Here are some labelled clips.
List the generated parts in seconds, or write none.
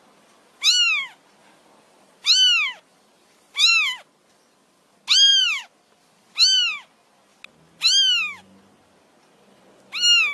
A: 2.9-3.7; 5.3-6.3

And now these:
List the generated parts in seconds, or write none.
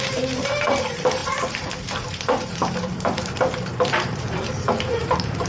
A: 0.0-5.5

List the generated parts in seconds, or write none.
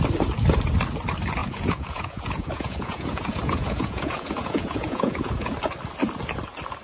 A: 1.4-5.5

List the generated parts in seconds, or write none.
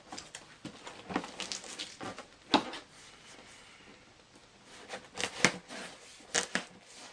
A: none